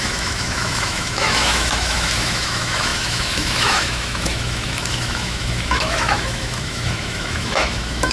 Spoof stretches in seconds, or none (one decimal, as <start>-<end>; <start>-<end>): 0.0-8.1